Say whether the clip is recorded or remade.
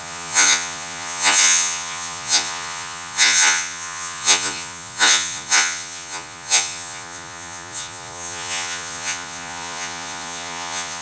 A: remade